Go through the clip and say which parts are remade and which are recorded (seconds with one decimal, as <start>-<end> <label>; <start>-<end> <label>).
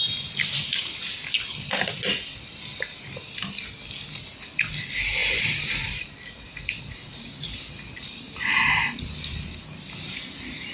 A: 0.0-5.2 recorded; 5.2-8.8 remade; 8.8-10.7 recorded